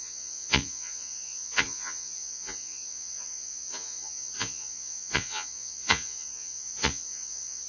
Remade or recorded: remade